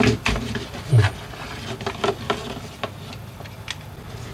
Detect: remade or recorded recorded